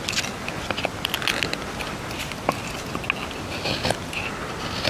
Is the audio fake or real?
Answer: real